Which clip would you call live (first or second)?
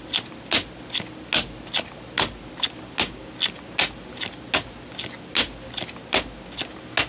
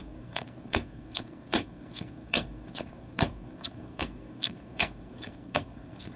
first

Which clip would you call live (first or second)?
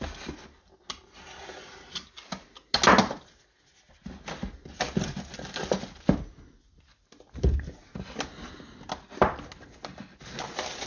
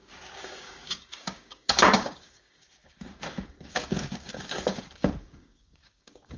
first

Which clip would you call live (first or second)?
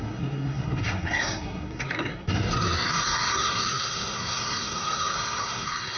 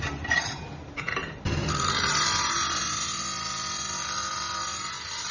second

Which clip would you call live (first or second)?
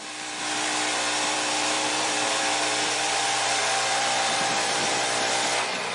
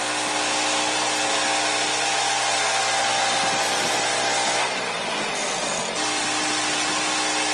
second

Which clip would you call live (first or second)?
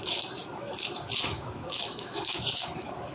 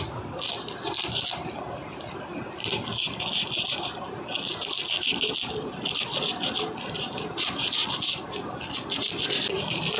second